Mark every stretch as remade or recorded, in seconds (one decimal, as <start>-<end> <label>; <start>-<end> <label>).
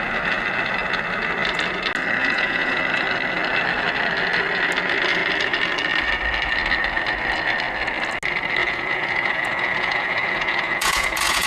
0.0-2.2 recorded; 2.2-2.8 remade; 2.8-8.6 recorded; 8.6-11.5 remade